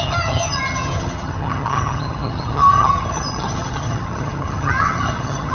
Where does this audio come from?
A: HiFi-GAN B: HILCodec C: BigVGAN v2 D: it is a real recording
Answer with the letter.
A